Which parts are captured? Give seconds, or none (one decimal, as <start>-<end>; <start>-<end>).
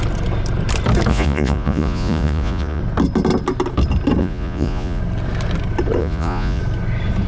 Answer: 0.0-1.1; 2.8-4.2; 5.0-6.0; 6.6-7.3